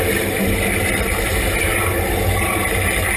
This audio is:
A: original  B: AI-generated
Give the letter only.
A